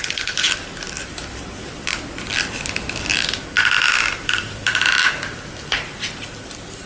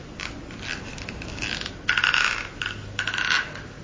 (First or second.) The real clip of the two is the second